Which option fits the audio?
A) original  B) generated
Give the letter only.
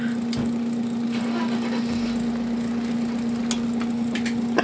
A